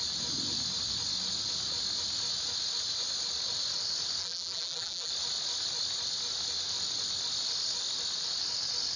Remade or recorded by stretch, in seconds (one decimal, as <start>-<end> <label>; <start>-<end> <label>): 0.0-4.2 recorded; 4.2-5.1 remade; 5.1-9.0 recorded